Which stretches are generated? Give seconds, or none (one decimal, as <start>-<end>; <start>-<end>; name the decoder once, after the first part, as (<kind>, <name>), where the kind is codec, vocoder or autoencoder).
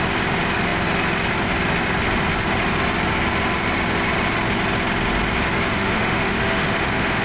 5.7-7.2 (autoencoder, DAC-VAE)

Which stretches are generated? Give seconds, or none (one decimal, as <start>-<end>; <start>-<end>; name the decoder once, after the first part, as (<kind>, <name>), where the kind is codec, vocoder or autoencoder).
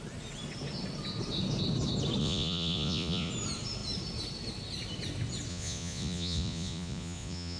2.2-3.3 (vocoder, Vocos); 5.5-7.6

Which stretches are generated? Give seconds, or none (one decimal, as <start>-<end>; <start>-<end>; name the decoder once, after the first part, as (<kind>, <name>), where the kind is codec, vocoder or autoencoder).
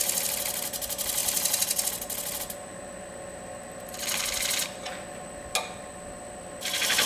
none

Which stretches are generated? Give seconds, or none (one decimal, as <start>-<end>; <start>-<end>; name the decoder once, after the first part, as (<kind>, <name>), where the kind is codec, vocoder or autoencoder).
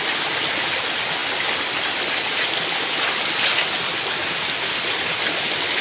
none